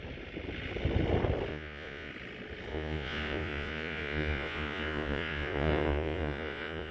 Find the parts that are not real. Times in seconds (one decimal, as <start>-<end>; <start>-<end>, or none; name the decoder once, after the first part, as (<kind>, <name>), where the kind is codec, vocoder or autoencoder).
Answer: 1.5-2.1 (vocoder, Vocos); 2.7-6.9